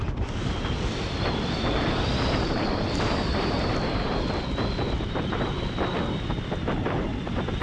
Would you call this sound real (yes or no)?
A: yes